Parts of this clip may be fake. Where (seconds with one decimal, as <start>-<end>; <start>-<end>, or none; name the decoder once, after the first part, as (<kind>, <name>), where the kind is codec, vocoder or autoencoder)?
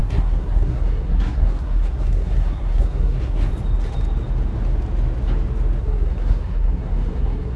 0.0-3.5 (codec, SNAC); 5.8-7.6